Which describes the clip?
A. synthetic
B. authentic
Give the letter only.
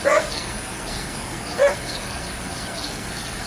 A